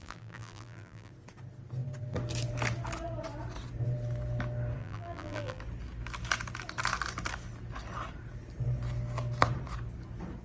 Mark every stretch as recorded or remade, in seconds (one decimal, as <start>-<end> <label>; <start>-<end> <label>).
0.0-1.1 remade; 1.1-4.8 recorded; 4.8-5.6 remade; 5.6-10.4 recorded